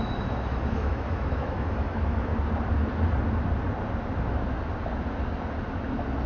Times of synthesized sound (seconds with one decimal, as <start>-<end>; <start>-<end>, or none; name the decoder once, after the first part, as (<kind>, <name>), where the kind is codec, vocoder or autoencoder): 0.0-2.3 (autoencoder, DAC-VAE)